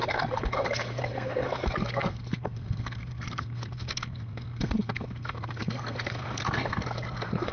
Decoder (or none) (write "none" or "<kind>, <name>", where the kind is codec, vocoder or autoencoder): codec, SNAC